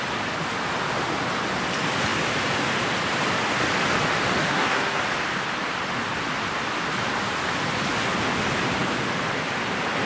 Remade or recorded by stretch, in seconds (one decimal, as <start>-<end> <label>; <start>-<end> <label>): 0.0-4.4 recorded; 4.4-5.0 remade; 5.0-10.1 recorded